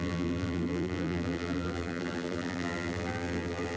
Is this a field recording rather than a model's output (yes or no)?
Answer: no